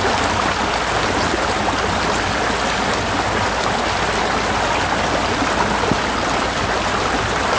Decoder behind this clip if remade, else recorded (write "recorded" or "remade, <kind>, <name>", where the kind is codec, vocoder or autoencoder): recorded